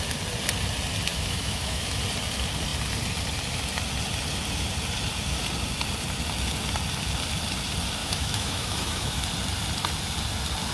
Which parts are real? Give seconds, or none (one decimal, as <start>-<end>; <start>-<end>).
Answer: 0.0-1.1; 2.0-8.0; 9.2-10.7